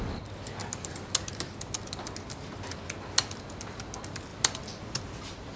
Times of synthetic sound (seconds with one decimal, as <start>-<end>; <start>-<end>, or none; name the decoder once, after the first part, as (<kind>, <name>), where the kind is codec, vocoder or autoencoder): none